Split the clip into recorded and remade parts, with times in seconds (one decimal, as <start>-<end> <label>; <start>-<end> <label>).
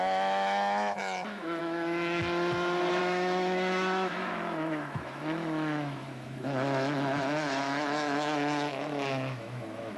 0.0-2.2 remade; 2.2-3.0 recorded; 3.0-10.0 remade